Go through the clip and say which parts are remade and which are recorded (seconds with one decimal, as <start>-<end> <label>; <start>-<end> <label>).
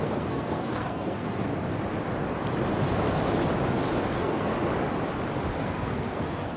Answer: 0.0-1.5 remade; 1.5-4.1 recorded; 4.1-4.5 remade; 4.5-5.5 recorded; 5.5-6.6 remade